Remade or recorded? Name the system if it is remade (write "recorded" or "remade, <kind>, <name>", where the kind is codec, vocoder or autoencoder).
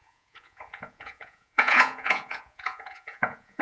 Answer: remade, vocoder, Vocos